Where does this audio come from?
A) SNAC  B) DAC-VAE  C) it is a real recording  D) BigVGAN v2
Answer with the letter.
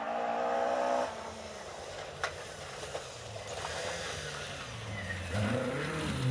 C